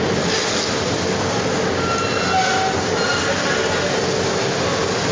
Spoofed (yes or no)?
no